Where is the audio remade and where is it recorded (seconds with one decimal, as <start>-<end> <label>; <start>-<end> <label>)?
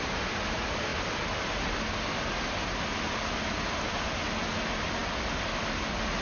0.0-6.2 recorded